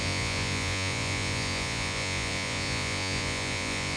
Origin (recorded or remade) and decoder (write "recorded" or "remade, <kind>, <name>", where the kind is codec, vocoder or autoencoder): remade, vocoder, Vocos